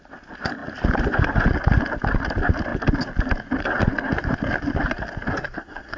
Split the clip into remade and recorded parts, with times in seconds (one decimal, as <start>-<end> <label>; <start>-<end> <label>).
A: 0.0-5.3 recorded; 5.3-6.0 remade

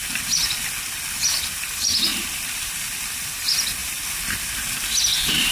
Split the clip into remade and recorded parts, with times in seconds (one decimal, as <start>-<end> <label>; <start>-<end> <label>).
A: 0.0-2.1 recorded; 2.1-3.2 remade; 3.2-5.5 recorded

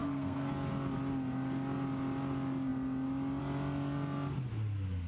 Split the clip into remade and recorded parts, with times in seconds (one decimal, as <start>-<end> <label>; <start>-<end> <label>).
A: 0.0-0.5 remade; 0.5-5.1 recorded

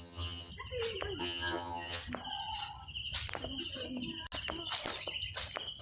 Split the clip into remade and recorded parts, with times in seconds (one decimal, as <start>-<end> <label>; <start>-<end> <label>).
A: 0.0-0.5 remade; 0.5-1.2 recorded; 1.2-2.0 remade; 2.0-5.8 recorded

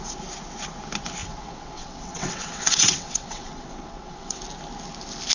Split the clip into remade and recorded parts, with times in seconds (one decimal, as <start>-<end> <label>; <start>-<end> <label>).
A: 0.0-1.2 recorded; 1.2-4.4 remade; 4.4-5.3 recorded

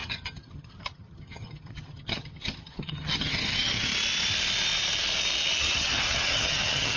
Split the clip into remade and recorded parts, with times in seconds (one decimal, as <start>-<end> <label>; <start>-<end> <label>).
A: 0.0-3.9 remade; 3.9-5.6 recorded; 5.6-7.0 remade

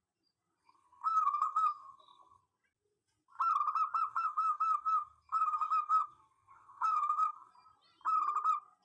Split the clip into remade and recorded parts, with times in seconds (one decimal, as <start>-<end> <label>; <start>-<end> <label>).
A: 0.0-0.6 recorded; 0.6-2.4 remade; 2.4-4.1 recorded; 4.1-7.5 remade; 7.5-8.8 recorded

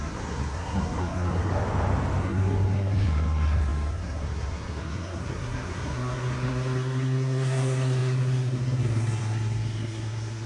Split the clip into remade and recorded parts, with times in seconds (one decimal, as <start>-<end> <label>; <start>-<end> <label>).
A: 0.0-1.5 remade; 1.5-2.2 recorded; 2.2-10.5 remade